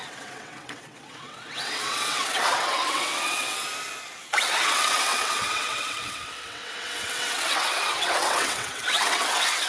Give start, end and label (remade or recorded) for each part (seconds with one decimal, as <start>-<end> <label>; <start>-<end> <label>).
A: 0.0-3.6 remade; 3.6-4.3 recorded; 4.3-9.7 remade